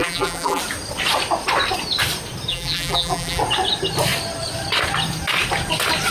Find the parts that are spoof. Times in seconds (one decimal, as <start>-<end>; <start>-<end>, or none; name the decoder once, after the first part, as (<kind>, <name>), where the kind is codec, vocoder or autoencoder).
0.0-0.6 (vocoder, BigVGAN v2); 2.5-3.4